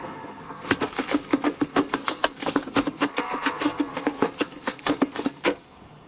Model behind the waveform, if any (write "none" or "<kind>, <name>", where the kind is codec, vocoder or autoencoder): codec, SNAC